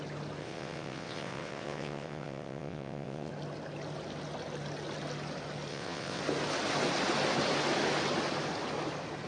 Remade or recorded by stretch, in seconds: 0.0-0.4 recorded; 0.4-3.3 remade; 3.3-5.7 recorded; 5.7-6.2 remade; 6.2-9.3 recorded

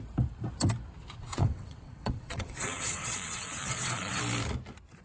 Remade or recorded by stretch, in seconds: 0.0-1.2 recorded; 1.2-4.2 remade; 4.2-5.0 recorded

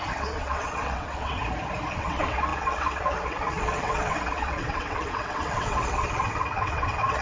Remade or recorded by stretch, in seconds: 0.0-1.4 remade; 1.4-1.9 recorded; 1.9-7.2 remade